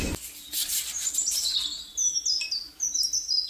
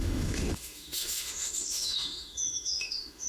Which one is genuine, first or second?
first